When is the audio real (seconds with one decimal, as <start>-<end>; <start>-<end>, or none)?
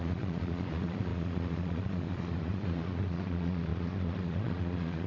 none